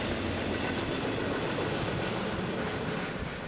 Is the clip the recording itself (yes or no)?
yes